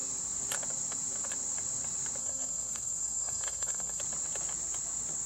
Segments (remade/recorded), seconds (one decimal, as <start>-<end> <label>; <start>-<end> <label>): 0.0-2.2 recorded; 2.2-4.0 remade; 4.0-5.3 recorded